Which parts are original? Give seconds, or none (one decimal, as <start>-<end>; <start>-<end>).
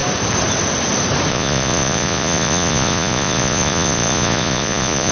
0.0-1.3